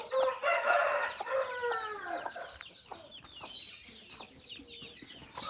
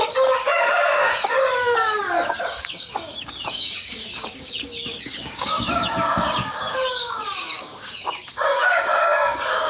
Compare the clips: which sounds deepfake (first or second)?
second